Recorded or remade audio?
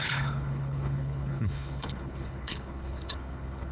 remade